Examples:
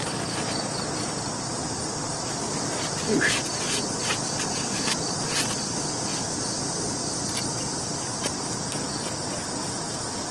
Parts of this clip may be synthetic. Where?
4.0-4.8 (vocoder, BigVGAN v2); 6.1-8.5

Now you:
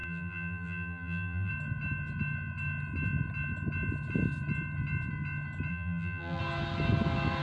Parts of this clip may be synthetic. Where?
0.0-1.5 (vocoder, BigVGAN v2); 5.7-6.4

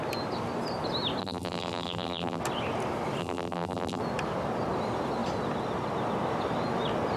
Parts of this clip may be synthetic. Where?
1.2-2.4 (vocoder, BigVGAN v2); 3.2-4.0

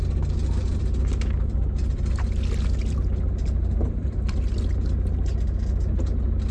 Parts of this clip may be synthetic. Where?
0.6-4.5 (vocoder, BigVGAN v2)

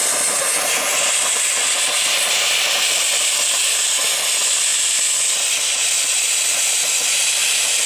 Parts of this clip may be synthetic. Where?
none

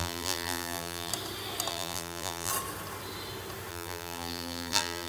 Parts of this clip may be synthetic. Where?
0.0-1.1 (vocoder, BigVGAN v2); 1.7-2.5; 3.7-5.1

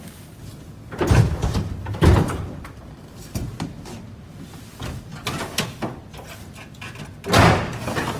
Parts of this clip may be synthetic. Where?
0.0-0.5 (vocoder, BigVGAN v2); 1.6-5.1; 7.7-8.2

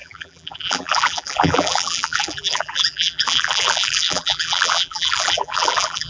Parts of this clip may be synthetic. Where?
0.0-6.1 (vocoder, BigVGAN v2)